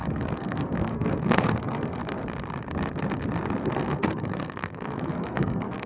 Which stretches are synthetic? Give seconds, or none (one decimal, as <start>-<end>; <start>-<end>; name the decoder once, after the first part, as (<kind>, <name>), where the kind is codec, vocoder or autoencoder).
0.0-2.0 (codec, SNAC); 3.7-5.9